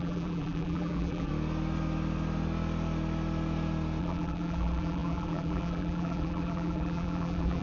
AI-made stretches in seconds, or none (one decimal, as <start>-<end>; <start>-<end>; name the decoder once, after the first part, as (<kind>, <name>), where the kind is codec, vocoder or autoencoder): 0.0-1.3 (vocoder, BigVGAN v2); 4.0-7.6